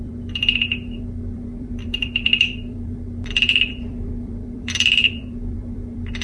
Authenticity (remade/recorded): remade